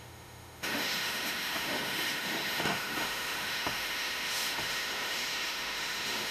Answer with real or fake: fake